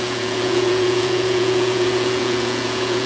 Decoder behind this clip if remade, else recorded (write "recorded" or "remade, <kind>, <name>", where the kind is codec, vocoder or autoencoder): remade, vocoder, Vocos